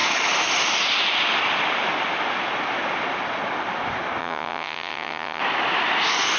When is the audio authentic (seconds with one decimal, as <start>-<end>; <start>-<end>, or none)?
0.0-4.2; 5.4-6.4